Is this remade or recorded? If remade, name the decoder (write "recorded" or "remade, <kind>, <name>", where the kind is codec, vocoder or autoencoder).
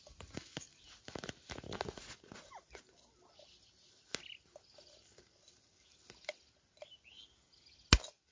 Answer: recorded